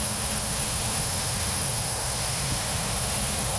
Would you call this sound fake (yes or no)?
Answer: yes